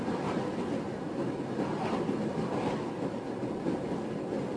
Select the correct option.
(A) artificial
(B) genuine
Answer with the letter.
B